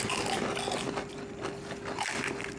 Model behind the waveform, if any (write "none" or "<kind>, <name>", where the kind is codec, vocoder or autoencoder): none